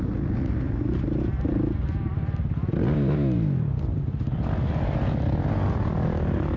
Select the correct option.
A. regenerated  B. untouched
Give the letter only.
B